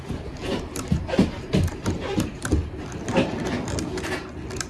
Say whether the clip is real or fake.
real